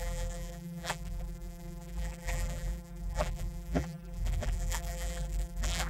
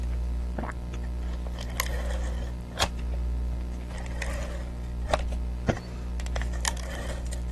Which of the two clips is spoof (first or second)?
first